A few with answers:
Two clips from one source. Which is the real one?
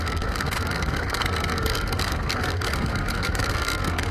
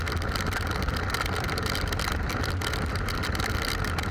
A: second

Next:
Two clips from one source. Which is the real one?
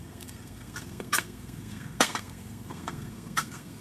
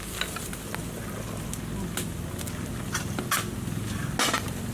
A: second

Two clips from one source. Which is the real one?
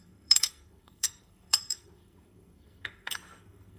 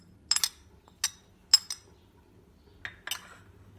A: second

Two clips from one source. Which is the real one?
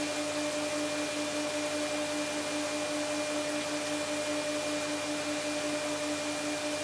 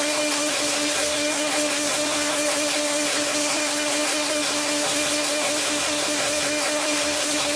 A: first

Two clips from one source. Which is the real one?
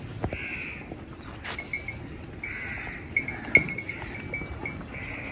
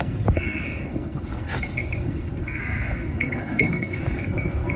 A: first